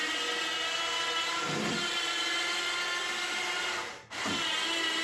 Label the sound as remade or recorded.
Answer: recorded